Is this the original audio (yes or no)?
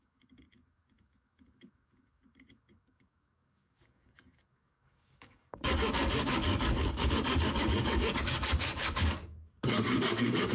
no